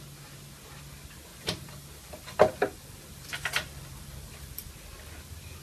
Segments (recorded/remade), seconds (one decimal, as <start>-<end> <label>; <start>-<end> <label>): 0.0-1.3 recorded; 1.3-4.7 remade; 4.7-5.6 recorded